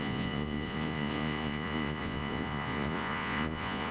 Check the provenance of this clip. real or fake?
fake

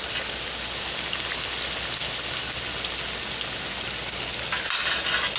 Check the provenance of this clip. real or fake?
real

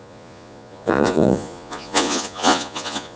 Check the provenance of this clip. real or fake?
fake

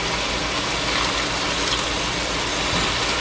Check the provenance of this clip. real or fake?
real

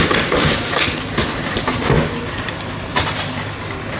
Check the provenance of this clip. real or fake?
real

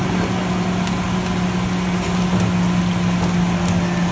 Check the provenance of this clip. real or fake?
real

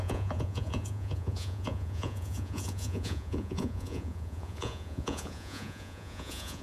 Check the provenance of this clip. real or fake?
fake